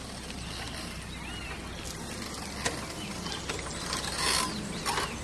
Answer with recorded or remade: recorded